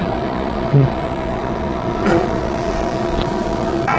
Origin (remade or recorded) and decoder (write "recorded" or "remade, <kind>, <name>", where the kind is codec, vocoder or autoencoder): remade, vocoder, Vocos